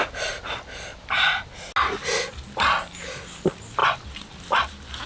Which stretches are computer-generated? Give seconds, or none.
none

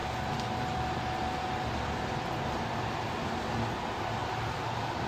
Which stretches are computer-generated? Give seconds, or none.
none

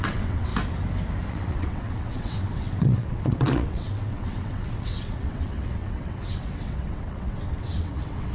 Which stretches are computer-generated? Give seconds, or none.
0.0-0.5 (vocoder, WaveNeXt); 1.3-8.3

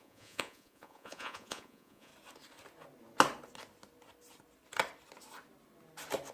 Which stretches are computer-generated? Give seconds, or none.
0.0-2.1 (vocoder, Vocos)

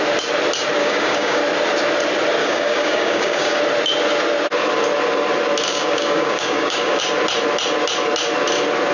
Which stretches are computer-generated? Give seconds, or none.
0.8-1.4 (codec, DAC); 2.4-3.6; 5.7-7.0

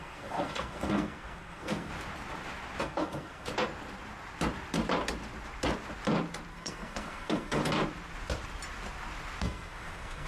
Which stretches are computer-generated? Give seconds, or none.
0.0-1.9 (codec, SNAC); 2.8-3.5; 6.5-7.6; 9.4-10.3